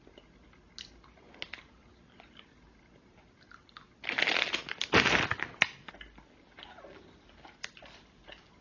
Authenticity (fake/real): real